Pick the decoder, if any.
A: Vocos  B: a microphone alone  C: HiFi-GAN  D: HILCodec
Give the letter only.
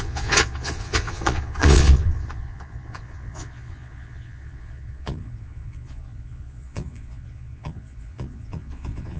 A